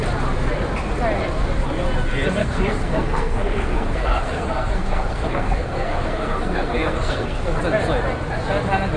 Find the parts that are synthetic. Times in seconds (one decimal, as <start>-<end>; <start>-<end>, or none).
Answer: 2.4-7.6

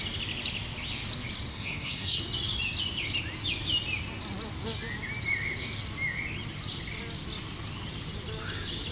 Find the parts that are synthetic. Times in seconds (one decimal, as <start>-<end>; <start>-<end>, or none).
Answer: 1.5-2.2

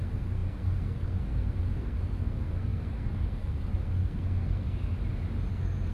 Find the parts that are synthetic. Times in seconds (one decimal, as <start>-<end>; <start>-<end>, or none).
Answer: 0.0-4.9; 5.5-5.9

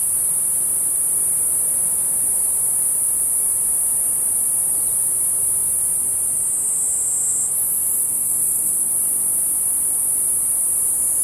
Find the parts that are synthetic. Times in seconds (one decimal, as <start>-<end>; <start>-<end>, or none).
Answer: 8.0-8.9

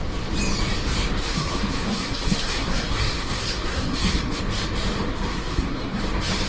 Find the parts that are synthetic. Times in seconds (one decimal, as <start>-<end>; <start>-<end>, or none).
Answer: 1.2-4.4; 5.1-6.0

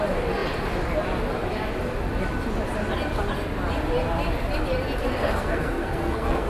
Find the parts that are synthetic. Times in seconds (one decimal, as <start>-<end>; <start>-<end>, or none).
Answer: 5.0-6.5